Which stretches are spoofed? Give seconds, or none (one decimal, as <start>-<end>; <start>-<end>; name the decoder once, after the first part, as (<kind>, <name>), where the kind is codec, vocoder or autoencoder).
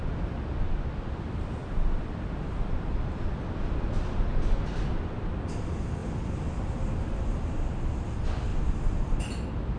1.6-3.4 (vocoder, BigVGAN v2); 4.3-4.9; 6.0-6.7; 8.5-9.1